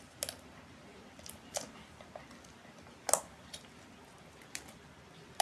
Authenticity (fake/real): real